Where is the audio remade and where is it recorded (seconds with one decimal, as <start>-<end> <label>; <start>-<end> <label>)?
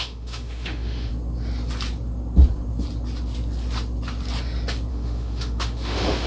0.0-1.1 remade; 1.1-4.9 recorded; 4.9-6.3 remade